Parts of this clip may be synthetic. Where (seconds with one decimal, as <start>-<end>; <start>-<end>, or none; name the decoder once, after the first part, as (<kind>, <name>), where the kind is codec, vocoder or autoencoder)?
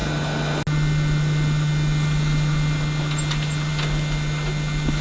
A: none